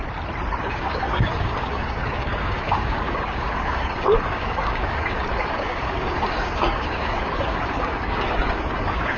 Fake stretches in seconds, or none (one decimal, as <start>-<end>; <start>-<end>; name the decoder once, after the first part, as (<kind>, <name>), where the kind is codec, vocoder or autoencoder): 0.6-9.2 (codec, DAC)